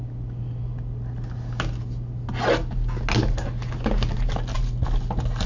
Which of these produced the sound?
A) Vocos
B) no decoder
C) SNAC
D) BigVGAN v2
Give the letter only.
B